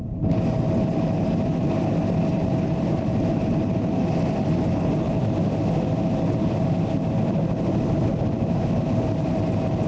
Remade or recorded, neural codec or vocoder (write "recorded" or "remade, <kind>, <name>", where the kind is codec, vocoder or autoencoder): recorded